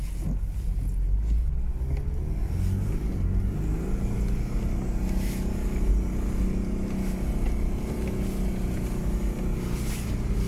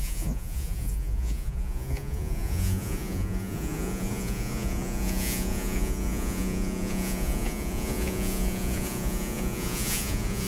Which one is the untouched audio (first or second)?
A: first